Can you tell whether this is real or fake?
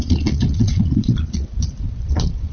fake